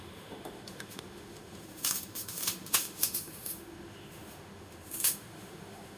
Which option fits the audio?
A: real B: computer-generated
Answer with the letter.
B